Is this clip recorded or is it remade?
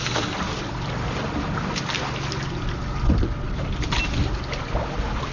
recorded